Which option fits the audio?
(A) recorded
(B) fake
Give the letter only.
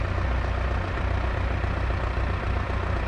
A